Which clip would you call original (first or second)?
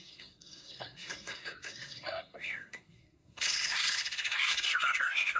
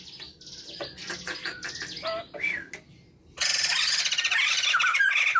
second